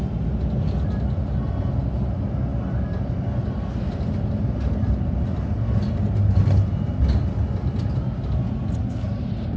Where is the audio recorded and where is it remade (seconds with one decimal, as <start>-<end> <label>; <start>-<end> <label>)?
0.0-9.6 recorded

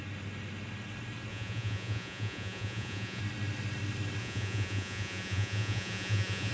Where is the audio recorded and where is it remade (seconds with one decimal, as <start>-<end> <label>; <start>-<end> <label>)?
0.0-1.3 recorded; 1.3-3.2 remade; 3.2-4.2 recorded; 4.2-6.5 remade

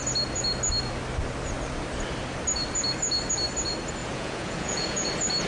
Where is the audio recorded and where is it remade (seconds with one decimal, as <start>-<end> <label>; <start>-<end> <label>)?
0.0-4.0 recorded; 4.0-5.1 remade; 5.1-5.5 recorded

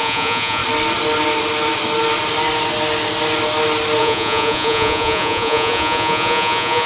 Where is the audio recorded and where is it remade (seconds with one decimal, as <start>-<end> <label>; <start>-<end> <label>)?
0.0-0.6 remade; 0.6-4.0 recorded; 4.0-6.9 remade

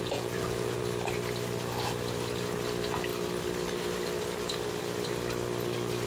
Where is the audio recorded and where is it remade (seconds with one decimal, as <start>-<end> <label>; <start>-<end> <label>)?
0.0-0.8 remade; 0.8-6.1 recorded

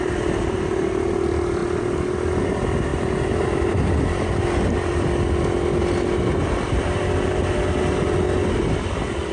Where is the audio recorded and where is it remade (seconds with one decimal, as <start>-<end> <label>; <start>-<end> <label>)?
0.0-9.3 recorded

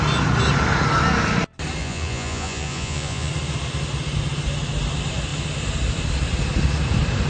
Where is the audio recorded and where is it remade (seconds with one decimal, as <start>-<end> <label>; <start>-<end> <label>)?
0.0-1.8 recorded; 1.8-3.3 remade; 3.3-7.3 recorded

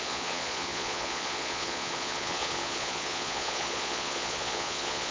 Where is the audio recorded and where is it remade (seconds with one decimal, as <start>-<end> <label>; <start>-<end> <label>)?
0.0-5.1 remade